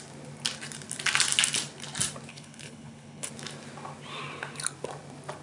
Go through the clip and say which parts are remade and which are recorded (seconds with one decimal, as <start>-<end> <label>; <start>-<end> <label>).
0.0-2.3 recorded; 2.3-3.3 remade; 3.3-5.4 recorded